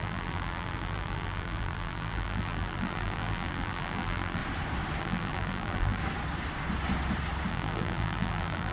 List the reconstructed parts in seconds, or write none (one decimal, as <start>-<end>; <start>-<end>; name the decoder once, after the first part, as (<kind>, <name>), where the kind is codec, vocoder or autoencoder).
0.0-4.4 (vocoder, BigVGAN v2); 5.0-6.0; 7.5-8.7